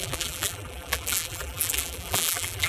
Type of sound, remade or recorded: remade